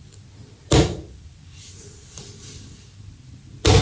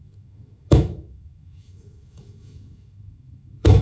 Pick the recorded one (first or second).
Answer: first